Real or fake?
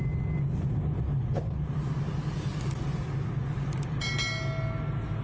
real